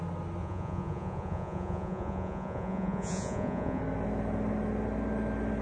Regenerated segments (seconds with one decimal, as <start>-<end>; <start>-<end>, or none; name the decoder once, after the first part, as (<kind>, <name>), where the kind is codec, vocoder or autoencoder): 0.4-3.8 (vocoder, Vocos)

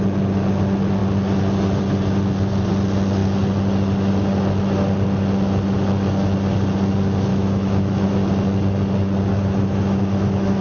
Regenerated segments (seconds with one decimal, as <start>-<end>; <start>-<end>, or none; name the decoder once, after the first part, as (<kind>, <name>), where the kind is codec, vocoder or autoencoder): 7.3-8.1 (autoencoder, DAC-VAE); 9.3-10.6

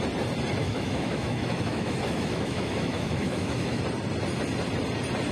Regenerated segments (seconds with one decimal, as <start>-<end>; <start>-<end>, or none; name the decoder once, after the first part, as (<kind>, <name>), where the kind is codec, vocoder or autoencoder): 0.6-3.8 (autoencoder, DAC-VAE)

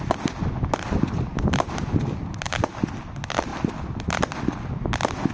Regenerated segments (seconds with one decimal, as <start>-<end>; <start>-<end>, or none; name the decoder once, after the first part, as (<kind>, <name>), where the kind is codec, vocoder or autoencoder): none

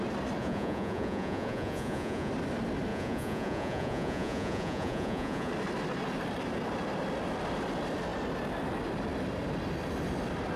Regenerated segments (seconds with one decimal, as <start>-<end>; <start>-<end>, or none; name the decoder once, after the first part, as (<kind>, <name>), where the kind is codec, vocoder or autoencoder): 0.4-2.3 (vocoder, Vocos); 2.9-5.5

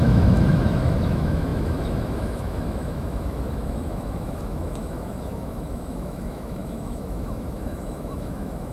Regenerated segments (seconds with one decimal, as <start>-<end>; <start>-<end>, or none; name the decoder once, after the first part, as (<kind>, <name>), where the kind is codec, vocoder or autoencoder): 0.0-8.7 (autoencoder, DAC-VAE)